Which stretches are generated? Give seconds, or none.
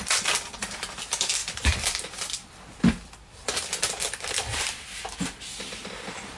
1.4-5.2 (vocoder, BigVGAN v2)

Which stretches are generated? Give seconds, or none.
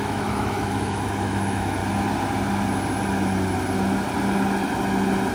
0.0-1.8 (autoencoder, DAC-VAE)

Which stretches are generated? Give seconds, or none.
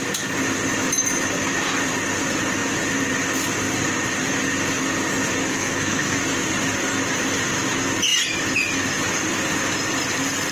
5.5-6.2 (codec, SNAC)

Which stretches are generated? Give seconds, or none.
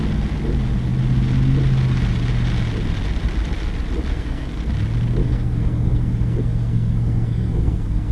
4.1-4.7 (codec, SNAC); 5.2-8.1